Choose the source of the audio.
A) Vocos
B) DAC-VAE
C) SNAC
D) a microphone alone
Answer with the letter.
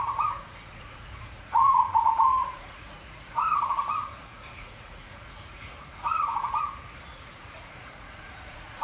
A